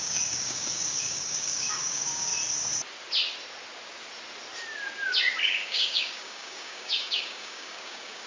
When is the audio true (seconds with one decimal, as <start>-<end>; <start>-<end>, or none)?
2.3-5.4